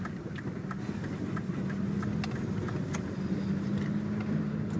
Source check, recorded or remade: recorded